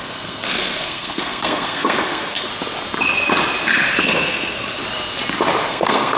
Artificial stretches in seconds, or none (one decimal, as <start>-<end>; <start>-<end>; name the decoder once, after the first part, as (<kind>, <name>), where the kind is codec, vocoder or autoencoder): 0.0-2.5 (codec, SNAC); 4.0-4.8; 5.7-6.2